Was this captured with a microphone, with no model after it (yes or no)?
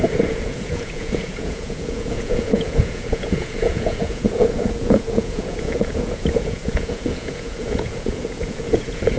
no